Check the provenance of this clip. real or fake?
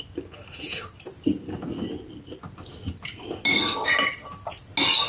real